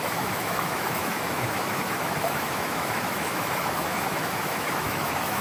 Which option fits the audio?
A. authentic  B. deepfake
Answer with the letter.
B